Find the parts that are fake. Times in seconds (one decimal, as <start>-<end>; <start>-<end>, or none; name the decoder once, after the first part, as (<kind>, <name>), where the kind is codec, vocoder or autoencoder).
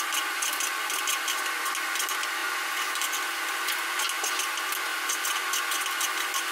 none